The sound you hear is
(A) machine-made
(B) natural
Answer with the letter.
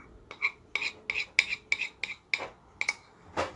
B